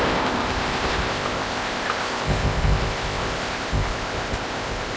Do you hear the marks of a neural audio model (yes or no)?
yes